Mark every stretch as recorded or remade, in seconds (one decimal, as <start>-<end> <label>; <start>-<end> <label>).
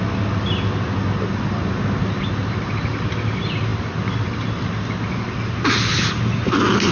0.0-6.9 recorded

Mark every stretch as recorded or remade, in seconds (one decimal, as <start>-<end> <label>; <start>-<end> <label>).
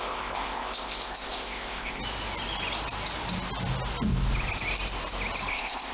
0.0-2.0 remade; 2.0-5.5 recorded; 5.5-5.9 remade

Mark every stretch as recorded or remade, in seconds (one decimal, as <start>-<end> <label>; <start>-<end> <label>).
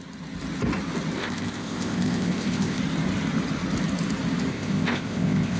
0.0-1.2 recorded; 1.2-2.8 remade; 2.8-4.5 recorded; 4.5-5.6 remade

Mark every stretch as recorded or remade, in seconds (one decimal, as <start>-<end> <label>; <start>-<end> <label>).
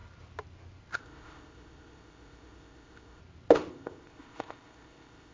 0.0-1.0 recorded; 1.0-3.2 remade; 3.2-3.7 recorded; 3.7-5.3 remade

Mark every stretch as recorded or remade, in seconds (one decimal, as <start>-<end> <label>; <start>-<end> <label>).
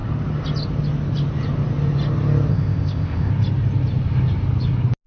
0.0-2.5 recorded; 2.5-3.3 remade; 3.3-5.1 recorded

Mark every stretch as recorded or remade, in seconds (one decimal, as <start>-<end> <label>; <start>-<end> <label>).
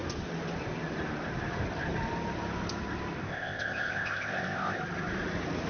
0.0-3.2 recorded; 3.2-4.8 remade; 4.8-5.7 recorded